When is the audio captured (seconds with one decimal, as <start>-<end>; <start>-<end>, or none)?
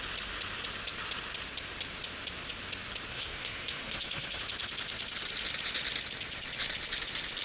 0.0-3.1; 4.4-7.4